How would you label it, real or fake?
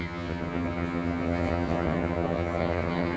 fake